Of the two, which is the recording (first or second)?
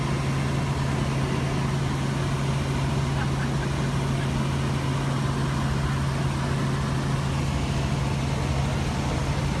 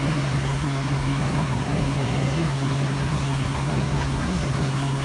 first